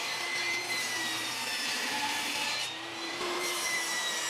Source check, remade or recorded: remade